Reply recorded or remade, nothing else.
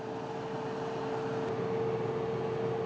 recorded